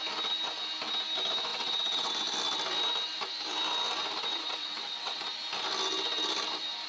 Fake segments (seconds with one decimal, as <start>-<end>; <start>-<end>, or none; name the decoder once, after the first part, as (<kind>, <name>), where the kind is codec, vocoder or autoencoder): 1.5-2.1 (vocoder, WaveNeXt); 4.3-5.2